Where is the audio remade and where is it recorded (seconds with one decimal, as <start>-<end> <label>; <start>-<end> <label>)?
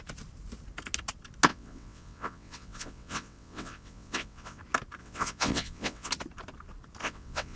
0.0-1.5 recorded; 1.5-4.6 remade; 4.6-5.0 recorded; 5.0-6.1 remade; 6.1-7.0 recorded; 7.0-7.6 remade